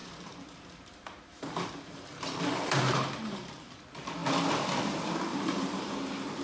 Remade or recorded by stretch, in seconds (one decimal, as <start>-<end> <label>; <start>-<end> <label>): 0.0-3.8 remade; 3.8-5.3 recorded; 5.3-5.9 remade; 5.9-6.4 recorded